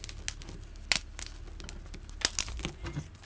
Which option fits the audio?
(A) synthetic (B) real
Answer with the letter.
B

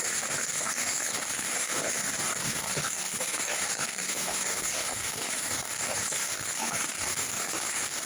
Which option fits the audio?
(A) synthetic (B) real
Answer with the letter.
A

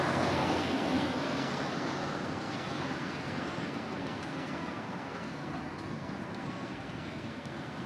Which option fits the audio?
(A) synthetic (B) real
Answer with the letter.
A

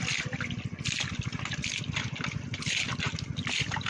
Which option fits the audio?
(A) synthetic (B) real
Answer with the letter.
B